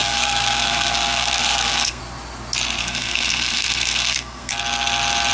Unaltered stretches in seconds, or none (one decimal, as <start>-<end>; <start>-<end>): 2.0-2.8; 4.5-5.3